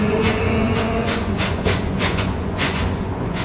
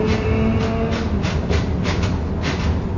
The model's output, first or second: first